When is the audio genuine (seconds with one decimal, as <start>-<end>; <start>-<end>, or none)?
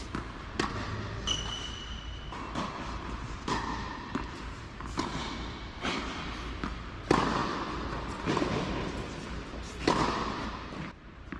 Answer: 0.0-11.4